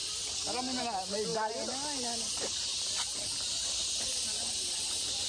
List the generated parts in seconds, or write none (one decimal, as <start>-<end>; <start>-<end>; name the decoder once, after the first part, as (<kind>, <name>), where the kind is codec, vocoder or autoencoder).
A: none